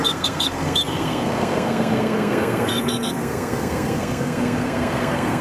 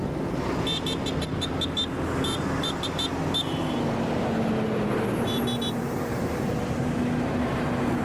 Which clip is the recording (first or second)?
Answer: second